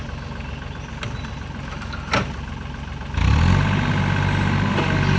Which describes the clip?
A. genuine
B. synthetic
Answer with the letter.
A